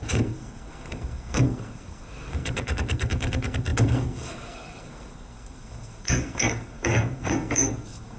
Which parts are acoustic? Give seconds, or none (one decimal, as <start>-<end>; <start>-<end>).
none